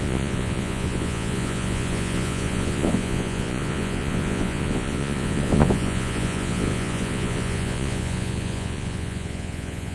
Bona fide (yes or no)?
no